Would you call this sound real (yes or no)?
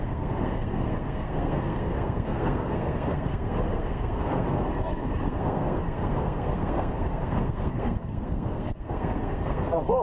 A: no